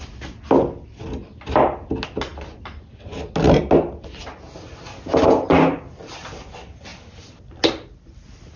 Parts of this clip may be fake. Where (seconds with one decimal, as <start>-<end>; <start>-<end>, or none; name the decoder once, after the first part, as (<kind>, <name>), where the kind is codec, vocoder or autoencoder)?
none